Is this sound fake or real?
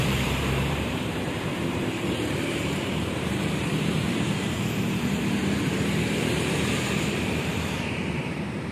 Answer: fake